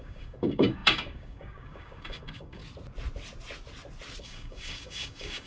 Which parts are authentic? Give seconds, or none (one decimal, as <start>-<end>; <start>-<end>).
2.6-4.2